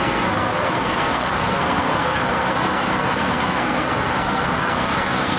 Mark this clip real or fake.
fake